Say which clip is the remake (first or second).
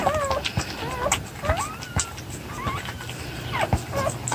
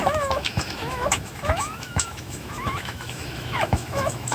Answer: second